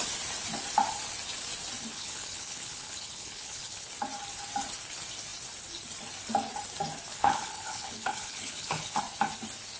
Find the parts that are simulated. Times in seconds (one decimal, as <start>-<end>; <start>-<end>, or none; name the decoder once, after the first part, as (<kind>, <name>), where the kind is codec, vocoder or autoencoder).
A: 1.9-3.9 (codec, HILCodec); 7.1-9.0